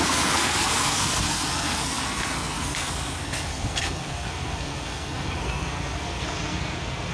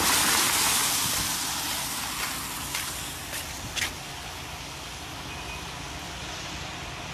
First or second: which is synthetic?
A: first